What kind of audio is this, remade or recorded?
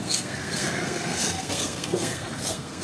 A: remade